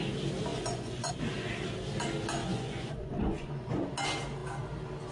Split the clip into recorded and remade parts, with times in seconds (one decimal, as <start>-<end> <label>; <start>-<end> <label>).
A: 0.0-0.5 recorded; 0.5-1.1 remade; 1.1-2.4 recorded; 2.4-3.8 remade; 3.8-5.1 recorded